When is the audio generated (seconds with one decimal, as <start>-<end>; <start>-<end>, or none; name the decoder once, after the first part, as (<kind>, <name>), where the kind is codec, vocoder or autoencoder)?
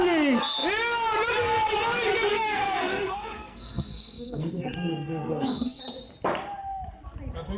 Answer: 2.3-5.8 (codec, SNAC)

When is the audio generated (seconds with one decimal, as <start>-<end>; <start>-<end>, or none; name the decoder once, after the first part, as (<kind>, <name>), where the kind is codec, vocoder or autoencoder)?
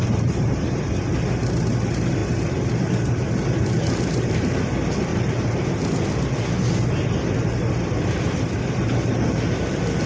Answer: none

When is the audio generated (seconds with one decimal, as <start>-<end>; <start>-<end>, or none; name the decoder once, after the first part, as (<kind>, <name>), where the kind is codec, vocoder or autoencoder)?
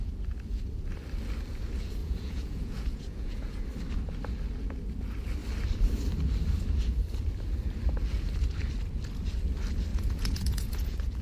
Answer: 2.0-3.6 (vocoder, Vocos); 9.9-11.2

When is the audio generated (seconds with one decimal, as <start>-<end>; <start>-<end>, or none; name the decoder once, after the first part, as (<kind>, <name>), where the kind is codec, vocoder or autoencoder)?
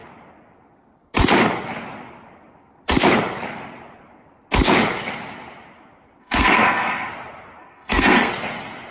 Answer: 6.2-7.1 (codec, SNAC); 7.6-8.3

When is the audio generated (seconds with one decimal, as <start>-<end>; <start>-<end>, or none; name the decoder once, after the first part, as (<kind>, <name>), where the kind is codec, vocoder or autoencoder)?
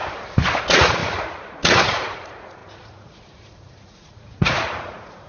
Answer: 0.6-5.3 (vocoder, Vocos)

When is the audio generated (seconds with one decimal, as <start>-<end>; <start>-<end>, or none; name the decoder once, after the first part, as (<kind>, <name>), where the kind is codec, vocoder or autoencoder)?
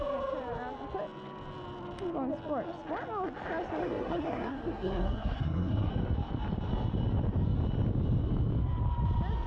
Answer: 3.8-5.9 (codec, SNAC)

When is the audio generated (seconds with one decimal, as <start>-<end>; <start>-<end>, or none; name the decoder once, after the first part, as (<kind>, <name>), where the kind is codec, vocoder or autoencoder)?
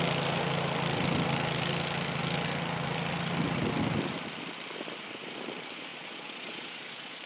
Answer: 5.9-7.3 (vocoder, Vocos)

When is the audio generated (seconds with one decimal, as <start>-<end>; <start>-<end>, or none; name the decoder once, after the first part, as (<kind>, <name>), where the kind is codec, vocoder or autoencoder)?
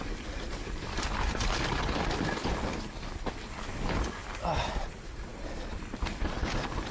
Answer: none